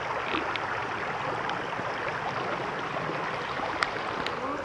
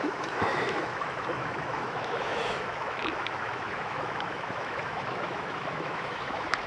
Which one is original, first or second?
first